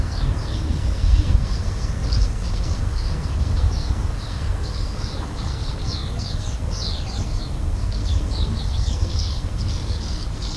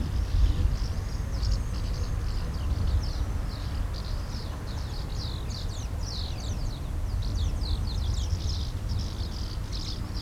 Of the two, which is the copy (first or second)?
first